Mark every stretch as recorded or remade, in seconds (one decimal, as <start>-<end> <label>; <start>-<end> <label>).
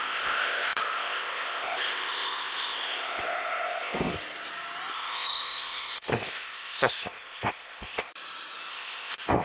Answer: 0.0-4.1 remade; 4.1-4.9 recorded; 4.9-8.1 remade; 8.1-8.7 recorded; 8.7-9.4 remade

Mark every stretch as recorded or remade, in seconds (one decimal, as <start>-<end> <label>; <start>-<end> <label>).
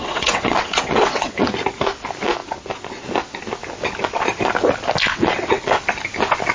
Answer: 0.0-1.5 remade; 1.5-5.1 recorded; 5.1-5.8 remade; 5.8-6.5 recorded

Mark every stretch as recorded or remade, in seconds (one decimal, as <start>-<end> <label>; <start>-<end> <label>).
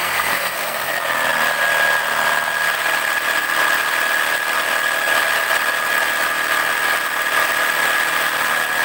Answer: 0.0-0.9 remade; 0.9-8.8 recorded